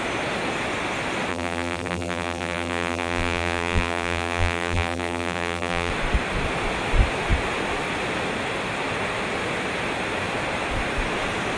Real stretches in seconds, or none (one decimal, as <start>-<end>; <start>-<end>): 0.0-1.3; 5.9-11.6